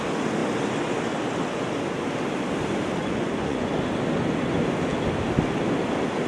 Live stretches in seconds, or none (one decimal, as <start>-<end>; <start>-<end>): 0.0-3.0; 3.7-6.3